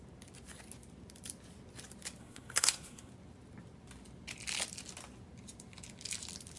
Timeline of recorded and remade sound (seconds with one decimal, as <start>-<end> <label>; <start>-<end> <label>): 0.0-2.2 recorded; 2.2-3.1 remade; 3.1-6.6 recorded